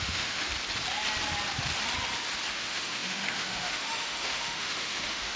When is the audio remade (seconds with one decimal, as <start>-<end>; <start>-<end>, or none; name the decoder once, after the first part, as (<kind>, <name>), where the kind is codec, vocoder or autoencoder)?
0.0-0.5 (autoencoder, DAC-VAE); 2.5-5.4